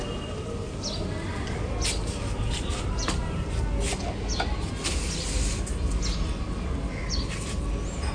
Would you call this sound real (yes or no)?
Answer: yes